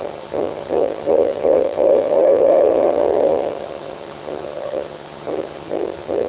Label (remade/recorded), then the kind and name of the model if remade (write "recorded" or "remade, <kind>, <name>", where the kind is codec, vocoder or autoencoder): remade, vocoder, HiFi-GAN